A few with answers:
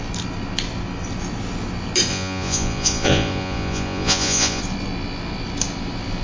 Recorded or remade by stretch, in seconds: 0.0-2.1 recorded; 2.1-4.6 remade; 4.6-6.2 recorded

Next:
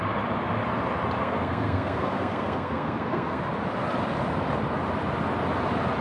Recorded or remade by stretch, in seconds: 0.0-1.2 recorded; 1.2-3.4 remade; 3.4-6.0 recorded

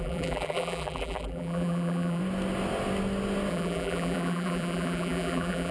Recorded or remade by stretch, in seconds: 0.0-2.2 remade; 2.2-3.5 recorded; 3.5-5.7 remade

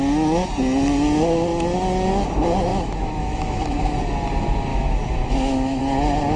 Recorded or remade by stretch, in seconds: 0.0-2.7 recorded; 2.7-3.9 remade; 3.9-4.7 recorded; 4.7-5.8 remade; 5.8-6.4 recorded

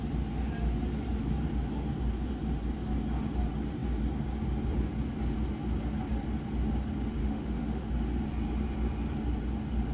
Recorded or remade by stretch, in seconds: 0.0-7.2 recorded; 7.2-7.9 remade; 7.9-9.9 recorded

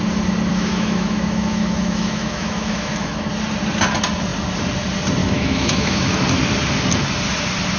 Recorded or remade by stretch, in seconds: 0.0-0.5 recorded; 0.5-3.3 remade; 3.3-5.2 recorded; 5.2-6.2 remade; 6.2-7.8 recorded